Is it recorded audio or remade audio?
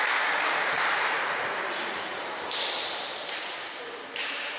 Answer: remade